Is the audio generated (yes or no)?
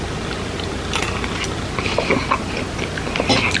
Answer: no